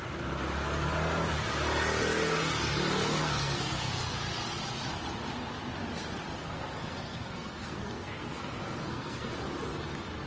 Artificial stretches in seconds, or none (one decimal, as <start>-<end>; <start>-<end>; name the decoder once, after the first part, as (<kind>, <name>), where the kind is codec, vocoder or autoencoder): 3.2-3.9 (codec, SNAC); 6.4-9.3